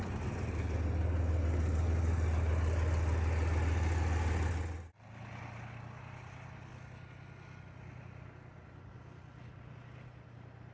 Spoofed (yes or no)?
no